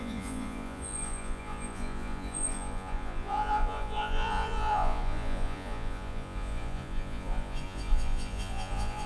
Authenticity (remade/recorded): remade